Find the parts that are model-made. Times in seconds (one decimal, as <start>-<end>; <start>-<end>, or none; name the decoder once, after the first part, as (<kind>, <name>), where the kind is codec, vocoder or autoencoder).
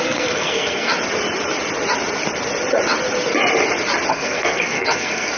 0.0-0.9 (codec, SNAC); 4.1-5.4